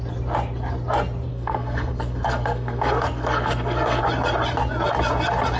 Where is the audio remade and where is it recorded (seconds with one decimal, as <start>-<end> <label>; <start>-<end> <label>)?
0.0-1.3 recorded; 1.3-4.0 remade; 4.0-5.6 recorded